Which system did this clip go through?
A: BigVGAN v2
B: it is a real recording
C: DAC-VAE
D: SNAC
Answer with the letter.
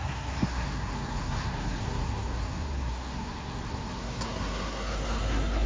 D